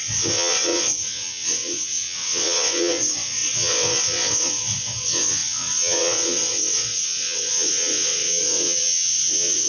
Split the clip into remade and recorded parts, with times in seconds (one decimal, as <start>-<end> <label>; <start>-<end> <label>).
0.0-9.7 remade